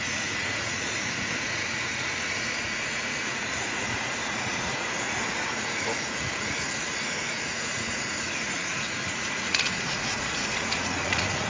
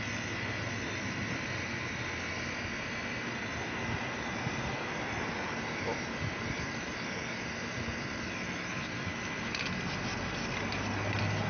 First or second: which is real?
second